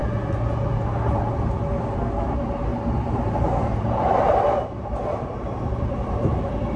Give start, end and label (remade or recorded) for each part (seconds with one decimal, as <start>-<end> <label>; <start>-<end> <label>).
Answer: 0.0-2.7 recorded; 2.7-5.9 remade; 5.9-6.8 recorded